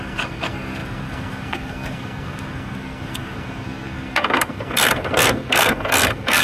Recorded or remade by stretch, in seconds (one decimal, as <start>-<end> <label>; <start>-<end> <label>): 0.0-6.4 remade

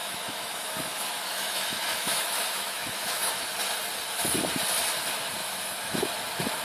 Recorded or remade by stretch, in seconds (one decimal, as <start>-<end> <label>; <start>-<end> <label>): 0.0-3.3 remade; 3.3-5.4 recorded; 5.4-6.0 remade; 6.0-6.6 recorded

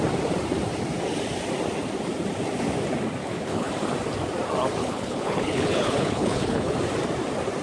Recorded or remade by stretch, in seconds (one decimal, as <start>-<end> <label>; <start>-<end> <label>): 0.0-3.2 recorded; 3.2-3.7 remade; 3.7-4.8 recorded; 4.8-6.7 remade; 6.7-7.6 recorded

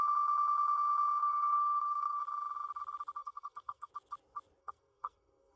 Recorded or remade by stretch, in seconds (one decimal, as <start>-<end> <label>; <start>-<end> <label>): 0.0-1.2 recorded; 1.2-2.2 remade; 2.2-3.2 recorded; 3.2-3.9 remade; 3.9-4.6 recorded; 4.6-5.6 remade

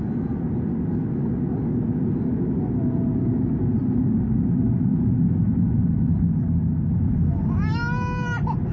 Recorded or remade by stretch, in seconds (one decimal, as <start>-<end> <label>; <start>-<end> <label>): 0.0-8.7 recorded